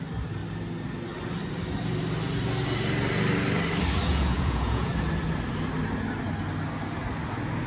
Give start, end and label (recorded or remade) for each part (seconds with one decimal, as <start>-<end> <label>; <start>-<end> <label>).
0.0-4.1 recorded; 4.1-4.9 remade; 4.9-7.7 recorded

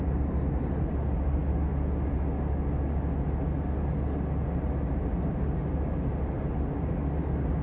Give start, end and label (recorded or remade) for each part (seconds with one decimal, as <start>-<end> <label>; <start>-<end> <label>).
0.0-7.6 recorded

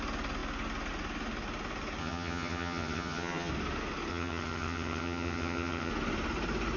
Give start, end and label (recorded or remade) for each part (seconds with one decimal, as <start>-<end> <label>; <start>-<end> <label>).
0.0-2.0 recorded; 2.0-3.5 remade; 3.5-4.1 recorded; 4.1-5.9 remade; 5.9-6.8 recorded

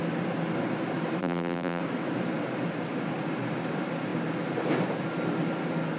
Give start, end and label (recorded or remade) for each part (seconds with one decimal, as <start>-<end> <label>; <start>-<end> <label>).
0.0-1.2 recorded; 1.2-1.8 remade; 1.8-6.0 recorded

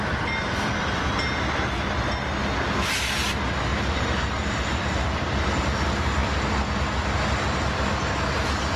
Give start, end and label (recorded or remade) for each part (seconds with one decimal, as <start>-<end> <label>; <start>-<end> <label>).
0.0-3.7 recorded; 3.7-5.6 remade; 5.6-8.8 recorded

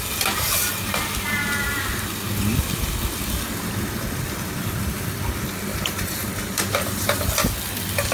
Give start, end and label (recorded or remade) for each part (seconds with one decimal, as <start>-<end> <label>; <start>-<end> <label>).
0.0-5.7 recorded; 5.7-7.3 remade; 7.3-8.1 recorded